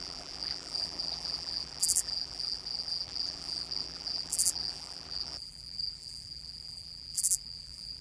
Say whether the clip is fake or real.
fake